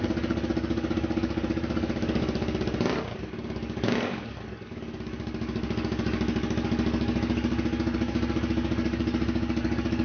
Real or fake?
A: fake